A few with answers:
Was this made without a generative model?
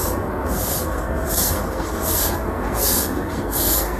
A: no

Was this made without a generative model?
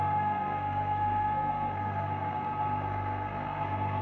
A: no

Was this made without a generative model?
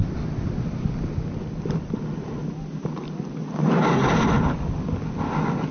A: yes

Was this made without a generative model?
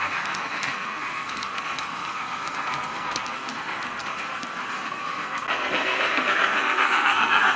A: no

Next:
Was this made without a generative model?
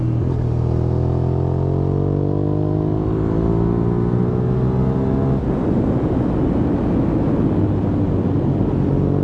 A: yes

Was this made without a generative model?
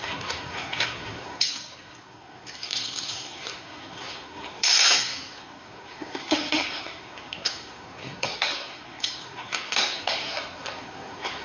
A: no